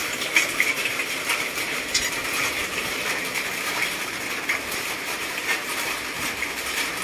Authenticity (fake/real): fake